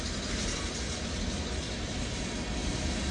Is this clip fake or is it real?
real